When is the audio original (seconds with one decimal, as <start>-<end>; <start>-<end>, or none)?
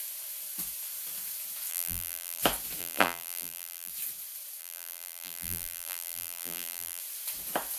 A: 0.0-1.7; 2.4-2.8; 3.9-4.6; 7.0-7.8